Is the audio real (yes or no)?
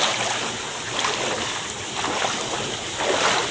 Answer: yes